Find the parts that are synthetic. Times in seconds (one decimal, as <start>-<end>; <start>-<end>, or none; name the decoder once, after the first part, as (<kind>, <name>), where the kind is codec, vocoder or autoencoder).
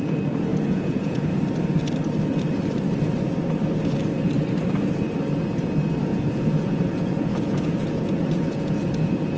0.5-1.3 (vocoder, Vocos); 6.1-9.4